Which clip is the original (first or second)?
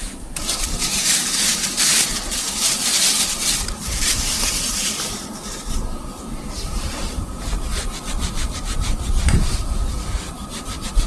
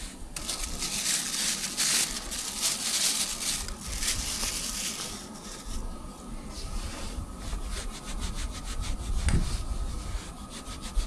second